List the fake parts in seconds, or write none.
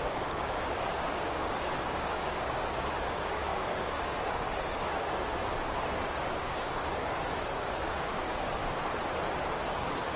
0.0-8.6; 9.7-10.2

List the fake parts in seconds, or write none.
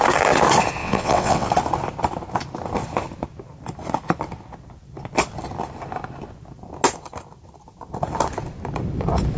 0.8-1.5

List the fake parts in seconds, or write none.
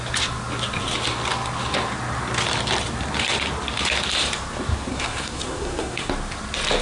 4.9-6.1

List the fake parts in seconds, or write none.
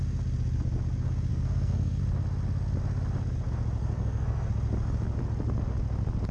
1.3-2.0; 3.8-4.5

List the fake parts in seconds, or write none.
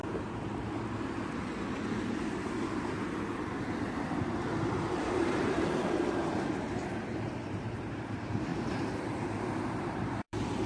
4.9-10.7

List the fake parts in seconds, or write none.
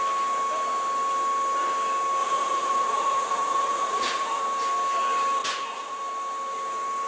2.2-4.4; 5.4-6.0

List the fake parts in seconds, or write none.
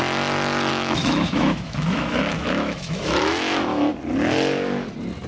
0.7-3.9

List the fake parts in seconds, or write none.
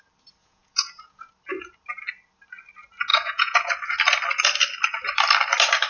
0.4-1.3; 3.1-3.7